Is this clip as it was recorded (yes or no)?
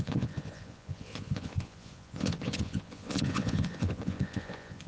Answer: no